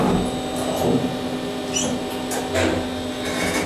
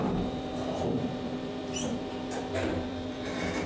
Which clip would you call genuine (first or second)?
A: first